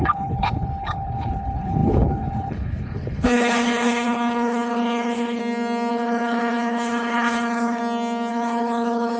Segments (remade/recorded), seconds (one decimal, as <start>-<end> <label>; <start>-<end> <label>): 0.0-5.4 remade; 5.4-5.9 recorded; 5.9-7.8 remade; 7.8-8.3 recorded; 8.3-9.2 remade